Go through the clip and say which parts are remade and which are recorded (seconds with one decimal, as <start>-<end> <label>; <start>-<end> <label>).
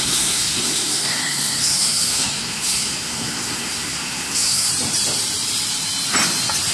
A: 0.0-4.7 remade; 4.7-6.7 recorded